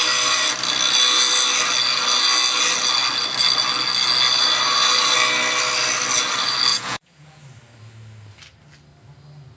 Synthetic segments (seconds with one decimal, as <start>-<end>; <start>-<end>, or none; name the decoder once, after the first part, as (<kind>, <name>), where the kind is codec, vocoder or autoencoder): 6.7-7.4 (vocoder, Vocos)

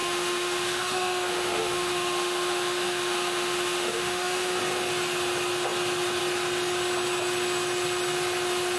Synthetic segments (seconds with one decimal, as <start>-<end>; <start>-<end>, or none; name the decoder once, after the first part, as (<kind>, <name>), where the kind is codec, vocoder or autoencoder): 0.0-4.6 (autoencoder, DAC-VAE)